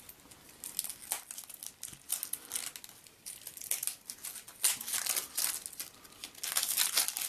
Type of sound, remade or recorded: recorded